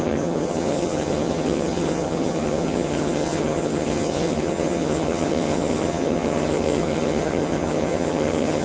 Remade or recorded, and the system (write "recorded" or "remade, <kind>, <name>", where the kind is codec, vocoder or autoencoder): remade, vocoder, HiFi-GAN